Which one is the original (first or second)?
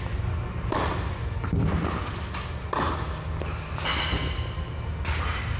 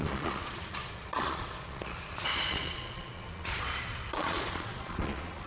first